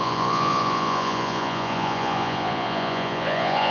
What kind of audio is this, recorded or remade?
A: remade